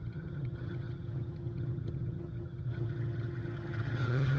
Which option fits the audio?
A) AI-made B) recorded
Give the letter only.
A